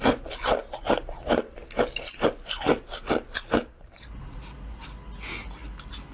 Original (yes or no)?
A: yes